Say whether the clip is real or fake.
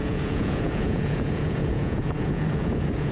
fake